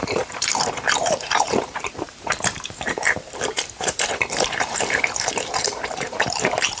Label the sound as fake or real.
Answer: fake